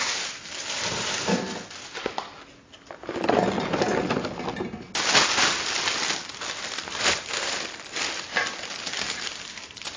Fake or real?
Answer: real